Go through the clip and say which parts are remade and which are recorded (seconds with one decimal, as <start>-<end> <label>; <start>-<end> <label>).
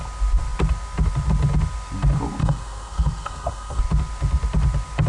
0.0-2.4 recorded; 2.4-3.8 remade; 3.8-5.1 recorded